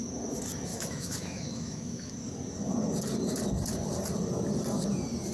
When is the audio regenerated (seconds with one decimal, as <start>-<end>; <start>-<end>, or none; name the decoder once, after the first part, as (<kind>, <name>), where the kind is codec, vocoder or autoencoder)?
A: 0.7-2.1 (autoencoder, DAC-VAE)